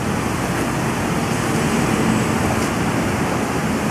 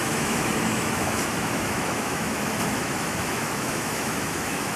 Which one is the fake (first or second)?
second